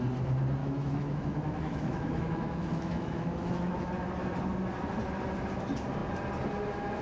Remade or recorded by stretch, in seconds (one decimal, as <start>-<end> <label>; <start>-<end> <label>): 0.0-0.6 recorded; 0.6-3.9 remade; 3.9-7.0 recorded